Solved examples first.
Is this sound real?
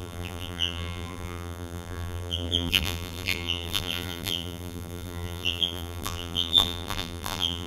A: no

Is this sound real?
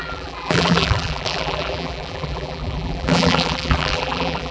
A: no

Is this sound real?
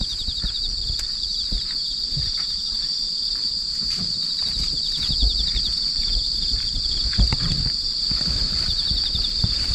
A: no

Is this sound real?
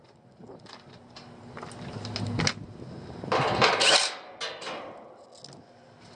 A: yes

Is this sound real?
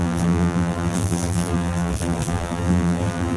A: no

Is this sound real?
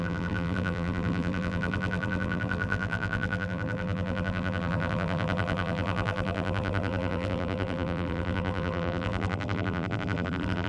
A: no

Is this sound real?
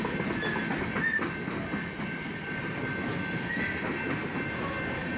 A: yes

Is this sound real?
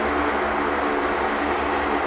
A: yes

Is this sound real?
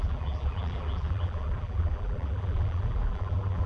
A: no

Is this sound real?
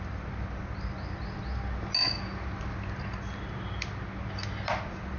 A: yes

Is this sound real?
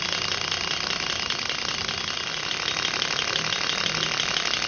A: yes